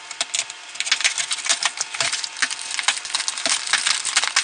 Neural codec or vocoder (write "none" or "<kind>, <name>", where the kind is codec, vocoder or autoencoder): none